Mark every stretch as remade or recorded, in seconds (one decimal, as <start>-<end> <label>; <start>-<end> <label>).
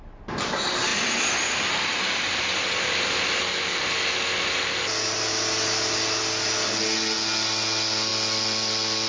0.0-9.1 recorded